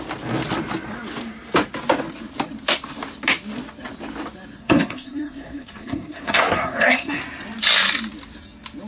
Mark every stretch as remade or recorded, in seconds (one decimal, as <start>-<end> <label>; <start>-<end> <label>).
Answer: 0.0-4.6 recorded; 4.6-7.2 remade; 7.2-8.9 recorded